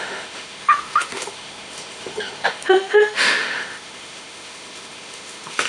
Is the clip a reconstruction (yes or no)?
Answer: yes